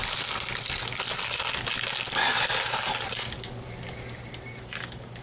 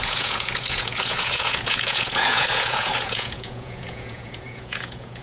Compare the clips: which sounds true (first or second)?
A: first